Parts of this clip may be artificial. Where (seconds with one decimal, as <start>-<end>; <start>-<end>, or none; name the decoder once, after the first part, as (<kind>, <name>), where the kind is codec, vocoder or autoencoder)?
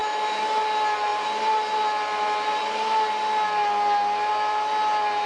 0.0-0.6 (autoencoder, DAC-VAE)